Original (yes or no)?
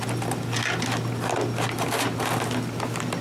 yes